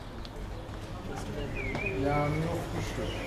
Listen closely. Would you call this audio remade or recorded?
recorded